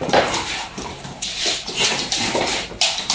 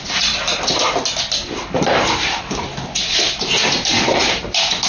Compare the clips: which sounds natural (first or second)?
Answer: second